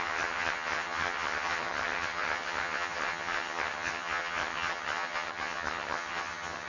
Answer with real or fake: fake